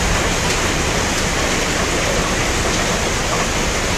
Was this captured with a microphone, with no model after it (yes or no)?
yes